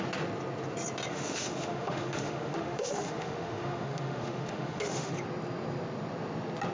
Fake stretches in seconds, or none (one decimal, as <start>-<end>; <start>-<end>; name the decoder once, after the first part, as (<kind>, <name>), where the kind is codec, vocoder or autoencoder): 1.1-5.1 (autoencoder, DAC-VAE)